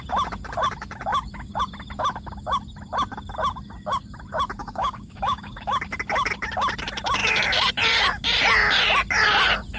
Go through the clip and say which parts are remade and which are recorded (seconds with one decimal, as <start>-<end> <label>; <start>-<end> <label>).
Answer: 0.0-4.6 recorded; 4.6-5.7 remade; 5.7-9.8 recorded